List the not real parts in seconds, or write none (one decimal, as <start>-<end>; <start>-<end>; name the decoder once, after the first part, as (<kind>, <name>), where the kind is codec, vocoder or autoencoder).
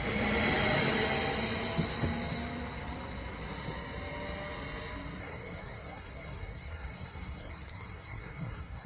5.2-8.9 (codec, SNAC)